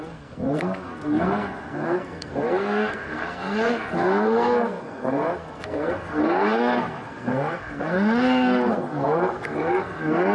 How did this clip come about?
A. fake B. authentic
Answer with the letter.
A